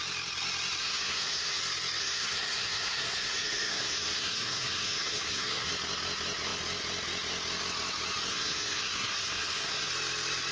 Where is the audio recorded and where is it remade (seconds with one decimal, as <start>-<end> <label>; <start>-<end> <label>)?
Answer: 0.0-0.8 recorded; 0.8-1.6 remade; 1.6-2.0 recorded; 2.0-5.7 remade; 5.7-8.3 recorded; 8.3-9.9 remade; 9.9-10.5 recorded